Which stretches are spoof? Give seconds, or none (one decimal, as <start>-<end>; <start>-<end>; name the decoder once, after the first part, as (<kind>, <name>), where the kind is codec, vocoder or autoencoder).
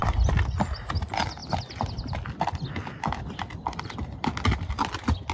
none